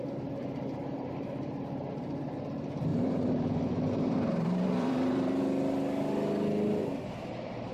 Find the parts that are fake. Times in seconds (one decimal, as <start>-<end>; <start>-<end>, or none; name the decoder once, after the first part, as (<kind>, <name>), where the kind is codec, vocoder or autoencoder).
2.9-5.4 (vocoder, BigVGAN v2); 6.8-7.3